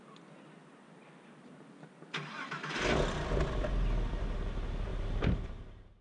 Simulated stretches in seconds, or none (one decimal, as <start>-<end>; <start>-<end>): 4.9-6.0